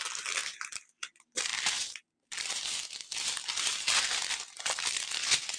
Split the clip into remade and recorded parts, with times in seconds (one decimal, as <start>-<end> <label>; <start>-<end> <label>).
0.0-5.6 recorded